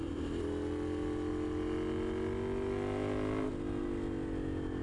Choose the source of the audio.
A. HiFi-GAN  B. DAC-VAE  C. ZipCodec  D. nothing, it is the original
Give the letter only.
D